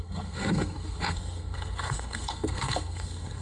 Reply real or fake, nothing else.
fake